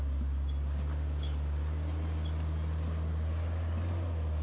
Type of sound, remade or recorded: recorded